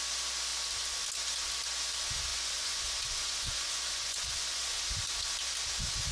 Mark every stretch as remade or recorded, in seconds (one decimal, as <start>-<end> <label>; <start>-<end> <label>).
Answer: 0.0-2.3 recorded; 2.3-4.8 remade; 4.8-6.1 recorded